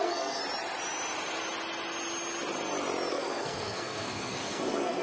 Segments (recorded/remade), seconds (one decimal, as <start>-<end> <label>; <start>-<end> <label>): 0.0-0.4 remade; 0.4-3.1 recorded; 3.1-5.0 remade